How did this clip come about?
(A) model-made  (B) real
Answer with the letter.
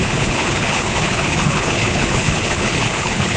A